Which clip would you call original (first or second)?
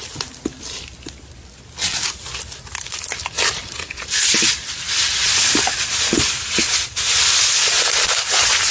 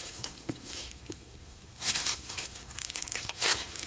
first